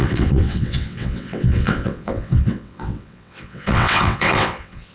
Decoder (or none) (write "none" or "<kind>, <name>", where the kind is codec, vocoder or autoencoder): vocoder, WaveNeXt